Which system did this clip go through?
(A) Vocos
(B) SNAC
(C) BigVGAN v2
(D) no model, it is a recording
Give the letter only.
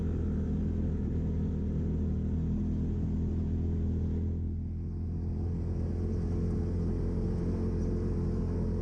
D